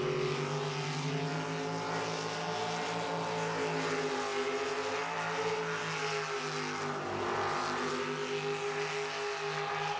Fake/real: real